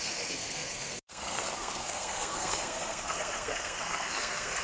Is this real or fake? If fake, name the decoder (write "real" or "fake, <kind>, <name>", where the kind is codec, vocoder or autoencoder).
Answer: fake, codec, SNAC